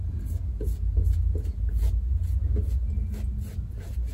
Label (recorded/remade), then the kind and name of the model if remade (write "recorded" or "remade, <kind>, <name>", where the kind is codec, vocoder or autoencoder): recorded